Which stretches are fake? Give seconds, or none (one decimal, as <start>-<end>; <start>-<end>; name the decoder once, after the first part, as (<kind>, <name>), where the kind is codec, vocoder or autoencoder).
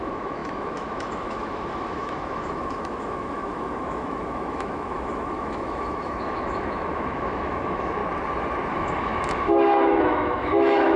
0.0-8.0 (autoencoder, DAC-VAE); 8.7-11.0